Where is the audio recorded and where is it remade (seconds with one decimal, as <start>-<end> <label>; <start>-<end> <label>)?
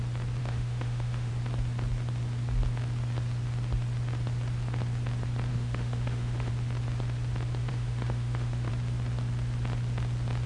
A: 0.0-0.4 recorded; 0.4-1.3 remade; 1.3-5.5 recorded; 5.5-6.5 remade; 6.5-7.7 recorded; 7.7-8.7 remade; 8.7-10.5 recorded